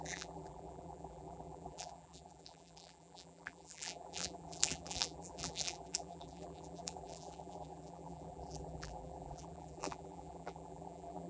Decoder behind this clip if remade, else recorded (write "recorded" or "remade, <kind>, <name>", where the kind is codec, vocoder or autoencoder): remade, vocoder, BigVGAN v2